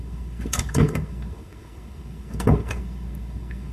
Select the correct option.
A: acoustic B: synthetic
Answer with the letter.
B